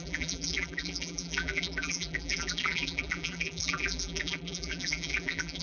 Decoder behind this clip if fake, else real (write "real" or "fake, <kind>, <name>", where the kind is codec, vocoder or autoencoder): fake, vocoder, BigVGAN v2